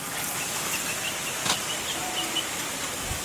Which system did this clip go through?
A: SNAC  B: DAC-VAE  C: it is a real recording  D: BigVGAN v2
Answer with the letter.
C